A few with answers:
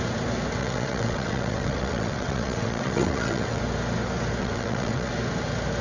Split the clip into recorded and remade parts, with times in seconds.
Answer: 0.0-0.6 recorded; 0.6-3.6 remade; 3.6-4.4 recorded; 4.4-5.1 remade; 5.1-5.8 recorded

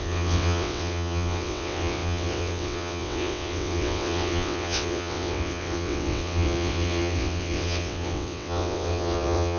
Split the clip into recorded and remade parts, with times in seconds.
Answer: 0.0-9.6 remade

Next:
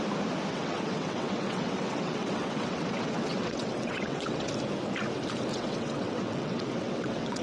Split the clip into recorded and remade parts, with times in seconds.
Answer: 0.0-0.5 recorded; 0.5-4.5 remade; 4.5-5.5 recorded; 5.5-7.4 remade

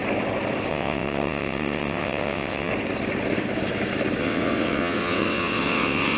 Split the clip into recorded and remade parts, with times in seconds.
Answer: 0.0-0.7 recorded; 0.7-2.7 remade; 2.7-4.2 recorded; 4.2-6.2 remade